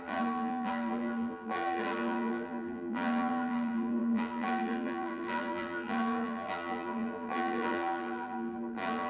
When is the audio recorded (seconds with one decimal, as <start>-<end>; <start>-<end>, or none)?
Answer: none